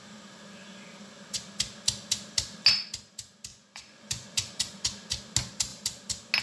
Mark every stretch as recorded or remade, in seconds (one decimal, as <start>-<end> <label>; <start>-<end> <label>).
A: 0.0-3.5 recorded; 3.5-5.1 remade; 5.1-6.4 recorded